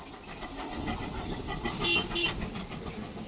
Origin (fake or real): fake